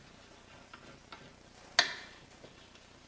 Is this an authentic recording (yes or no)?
yes